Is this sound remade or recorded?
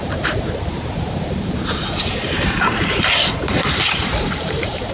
remade